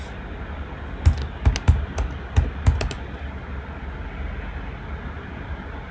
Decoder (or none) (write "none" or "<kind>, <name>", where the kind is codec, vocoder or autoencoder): none